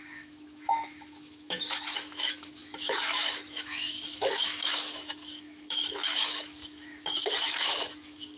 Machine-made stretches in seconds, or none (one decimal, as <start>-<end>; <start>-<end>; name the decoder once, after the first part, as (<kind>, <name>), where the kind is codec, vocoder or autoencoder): 0.0-8.4 (autoencoder, DAC-VAE)